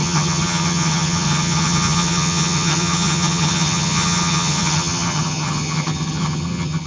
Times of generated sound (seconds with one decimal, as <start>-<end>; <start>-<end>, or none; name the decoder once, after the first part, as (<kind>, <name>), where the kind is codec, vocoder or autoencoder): 0.0-6.9 (vocoder, HiFi-GAN)